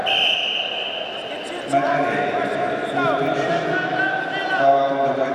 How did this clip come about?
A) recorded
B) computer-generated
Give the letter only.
A